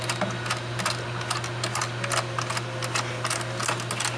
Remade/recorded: recorded